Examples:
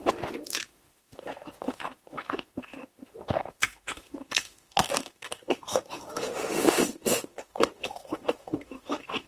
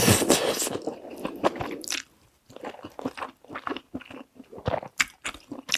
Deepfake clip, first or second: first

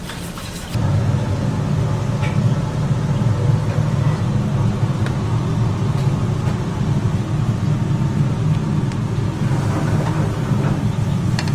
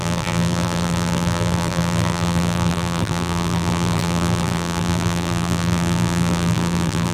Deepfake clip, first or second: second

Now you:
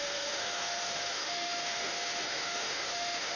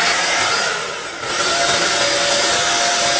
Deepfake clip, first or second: first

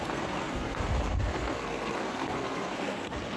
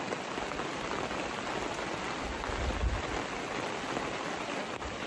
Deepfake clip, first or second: first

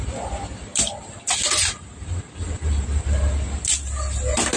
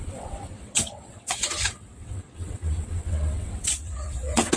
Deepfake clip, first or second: second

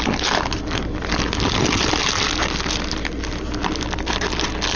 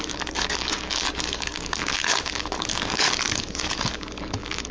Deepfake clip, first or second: second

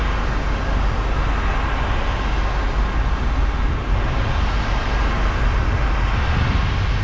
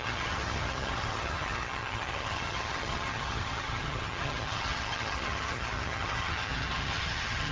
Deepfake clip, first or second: second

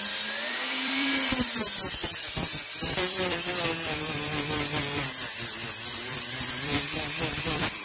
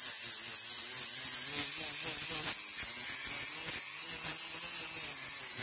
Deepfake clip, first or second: first